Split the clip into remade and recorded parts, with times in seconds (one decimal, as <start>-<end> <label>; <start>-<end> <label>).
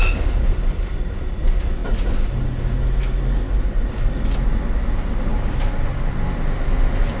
0.0-5.3 recorded; 5.3-5.9 remade; 5.9-7.2 recorded